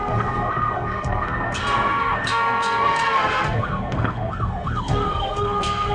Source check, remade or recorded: remade